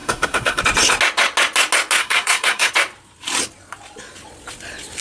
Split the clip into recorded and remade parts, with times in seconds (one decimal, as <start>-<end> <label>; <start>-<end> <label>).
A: 0.0-0.6 remade; 0.6-2.0 recorded; 2.0-2.7 remade; 2.7-5.0 recorded